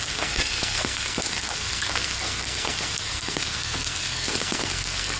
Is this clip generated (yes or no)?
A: yes